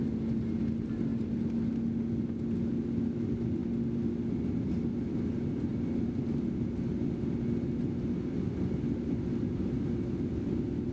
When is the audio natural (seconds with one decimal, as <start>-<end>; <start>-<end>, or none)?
0.0-10.9